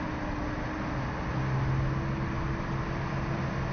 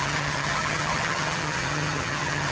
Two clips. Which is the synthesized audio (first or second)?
second